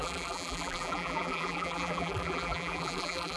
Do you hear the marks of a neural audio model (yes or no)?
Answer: yes